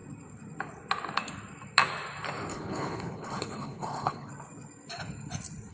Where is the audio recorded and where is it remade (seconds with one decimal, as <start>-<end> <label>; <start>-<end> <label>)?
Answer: 0.0-2.5 recorded; 2.5-4.3 remade; 4.3-5.7 recorded